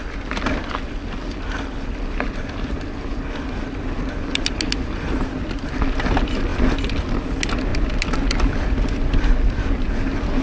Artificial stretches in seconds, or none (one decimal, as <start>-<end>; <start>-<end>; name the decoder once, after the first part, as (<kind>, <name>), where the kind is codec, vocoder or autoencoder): 0.0-5.1 (vocoder, BigVGAN v2); 7.7-9.2